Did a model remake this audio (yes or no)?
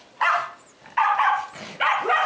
no